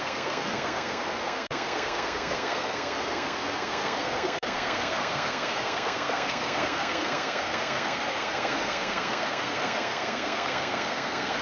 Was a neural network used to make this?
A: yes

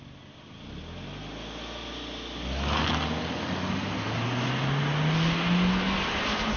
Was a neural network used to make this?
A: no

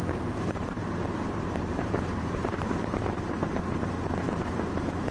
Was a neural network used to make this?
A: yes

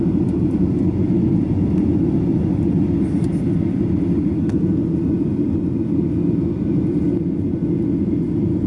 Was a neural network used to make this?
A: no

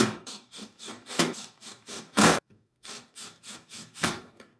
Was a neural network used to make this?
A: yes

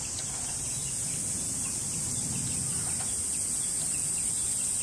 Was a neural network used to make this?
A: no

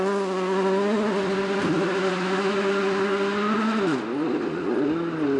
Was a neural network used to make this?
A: no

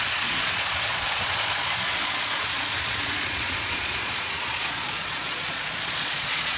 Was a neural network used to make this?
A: yes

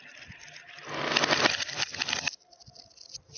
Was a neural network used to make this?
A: yes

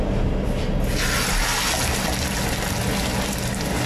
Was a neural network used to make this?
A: no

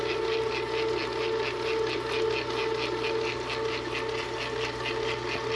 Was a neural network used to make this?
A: no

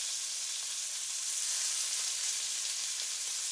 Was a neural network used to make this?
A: no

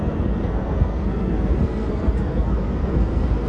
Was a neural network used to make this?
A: yes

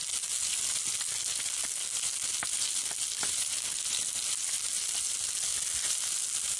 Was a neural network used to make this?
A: no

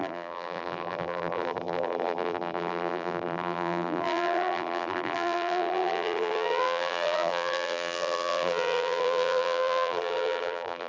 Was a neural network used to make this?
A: yes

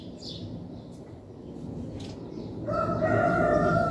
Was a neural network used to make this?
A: no